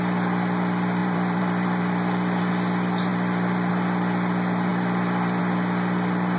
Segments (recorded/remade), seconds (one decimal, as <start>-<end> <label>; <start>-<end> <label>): 0.0-1.0 recorded; 1.0-2.5 remade; 2.5-3.1 recorded; 3.1-3.7 remade; 3.7-4.7 recorded; 4.7-5.4 remade; 5.4-6.4 recorded